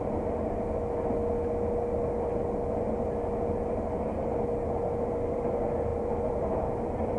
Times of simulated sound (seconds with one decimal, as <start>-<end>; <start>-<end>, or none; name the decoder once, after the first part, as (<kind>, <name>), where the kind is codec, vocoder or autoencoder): none